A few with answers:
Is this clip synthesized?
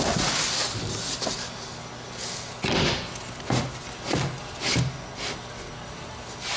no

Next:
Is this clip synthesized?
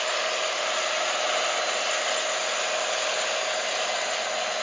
no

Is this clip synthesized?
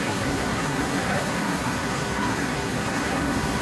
yes